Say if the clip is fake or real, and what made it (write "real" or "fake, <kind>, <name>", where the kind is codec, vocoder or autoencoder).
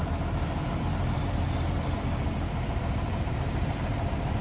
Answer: fake, vocoder, BigVGAN v2